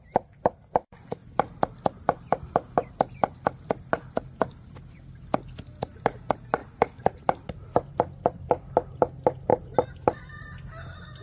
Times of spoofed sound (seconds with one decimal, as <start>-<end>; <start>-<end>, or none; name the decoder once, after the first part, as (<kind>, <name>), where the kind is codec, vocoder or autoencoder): 1.2-4.9 (vocoder, BigVGAN v2); 6.6-7.9